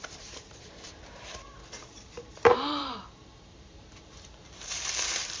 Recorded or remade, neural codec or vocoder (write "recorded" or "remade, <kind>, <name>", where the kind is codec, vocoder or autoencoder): remade, vocoder, BigVGAN v2